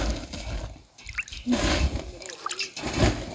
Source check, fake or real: real